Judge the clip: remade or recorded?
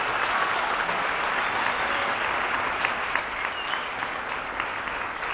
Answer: recorded